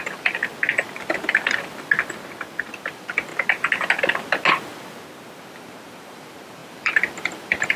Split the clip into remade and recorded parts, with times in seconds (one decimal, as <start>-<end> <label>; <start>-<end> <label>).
0.0-0.4 remade; 0.4-2.6 recorded; 2.6-3.3 remade; 3.3-5.5 recorded; 5.5-7.8 remade